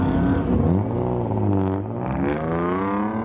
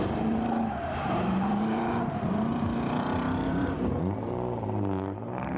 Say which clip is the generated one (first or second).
second